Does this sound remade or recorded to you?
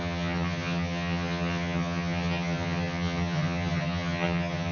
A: remade